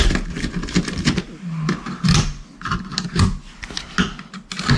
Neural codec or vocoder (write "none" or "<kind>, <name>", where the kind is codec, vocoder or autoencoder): none